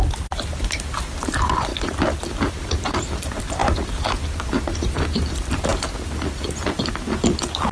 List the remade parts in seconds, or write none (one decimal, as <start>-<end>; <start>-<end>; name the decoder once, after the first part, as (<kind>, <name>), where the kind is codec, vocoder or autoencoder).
0.0-1.7 (vocoder, BigVGAN v2); 2.5-3.6; 4.2-5.7